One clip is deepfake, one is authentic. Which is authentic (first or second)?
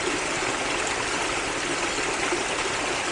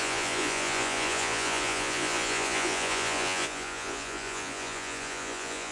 first